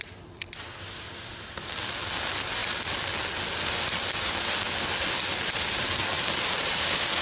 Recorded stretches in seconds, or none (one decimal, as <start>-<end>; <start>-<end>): 0.0-7.2